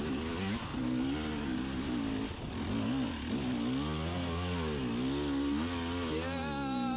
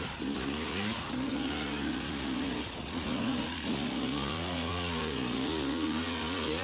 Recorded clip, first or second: first